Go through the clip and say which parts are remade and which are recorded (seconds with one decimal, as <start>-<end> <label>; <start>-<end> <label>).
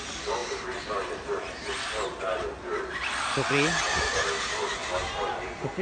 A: 0.0-4.8 recorded; 4.8-5.8 remade